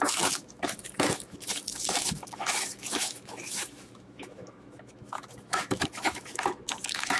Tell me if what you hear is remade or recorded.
remade